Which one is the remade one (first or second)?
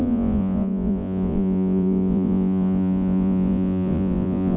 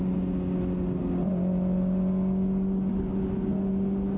first